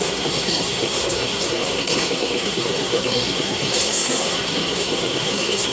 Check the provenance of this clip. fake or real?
fake